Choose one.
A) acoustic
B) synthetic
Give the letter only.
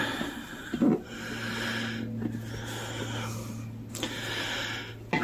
A